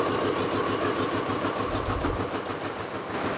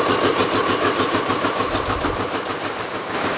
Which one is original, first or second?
first